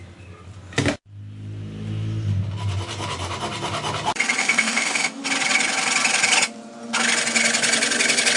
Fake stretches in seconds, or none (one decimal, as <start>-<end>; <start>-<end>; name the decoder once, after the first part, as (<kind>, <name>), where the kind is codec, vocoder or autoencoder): 4.4-5.2 (autoencoder, DAC-VAE)